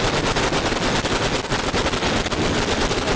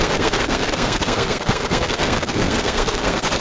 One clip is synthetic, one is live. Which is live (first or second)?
first